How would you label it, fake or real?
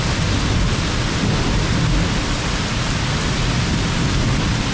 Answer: real